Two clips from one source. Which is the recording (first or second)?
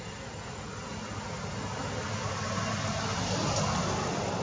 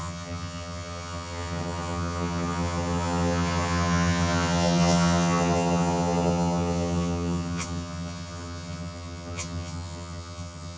first